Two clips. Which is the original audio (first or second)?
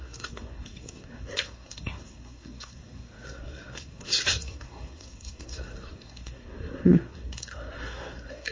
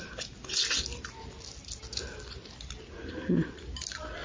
second